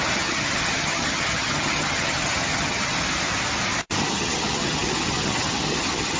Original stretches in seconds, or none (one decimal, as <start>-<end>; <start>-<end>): 2.9-4.0